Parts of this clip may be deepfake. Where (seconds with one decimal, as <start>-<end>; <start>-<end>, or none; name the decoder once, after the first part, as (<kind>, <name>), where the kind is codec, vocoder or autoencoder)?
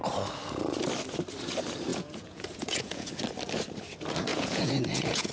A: 1.9-3.1 (vocoder, Vocos); 4.3-5.3